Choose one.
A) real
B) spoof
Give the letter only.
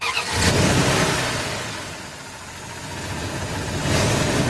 A